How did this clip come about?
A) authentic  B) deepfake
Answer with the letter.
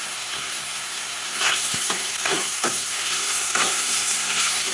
B